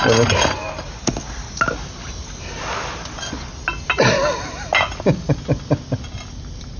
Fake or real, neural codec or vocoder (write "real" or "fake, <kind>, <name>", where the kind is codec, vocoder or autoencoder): real